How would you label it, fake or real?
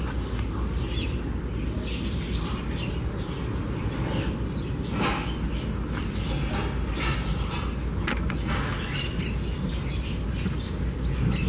real